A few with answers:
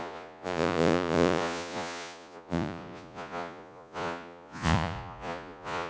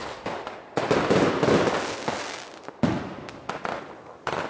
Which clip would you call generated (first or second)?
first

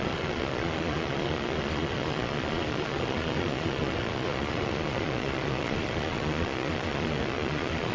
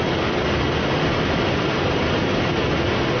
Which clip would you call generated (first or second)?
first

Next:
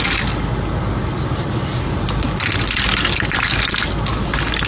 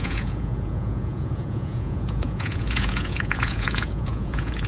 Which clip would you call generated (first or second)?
second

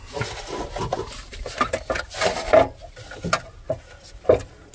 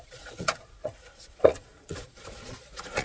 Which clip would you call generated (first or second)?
second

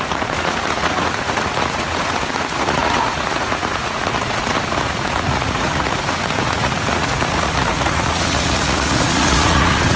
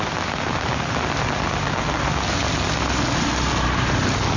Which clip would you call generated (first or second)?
first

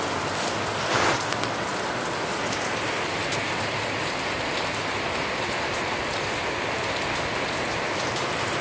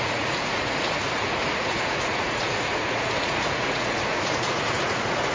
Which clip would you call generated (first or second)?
second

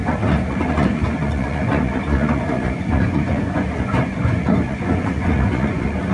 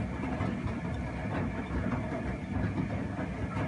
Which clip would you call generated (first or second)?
first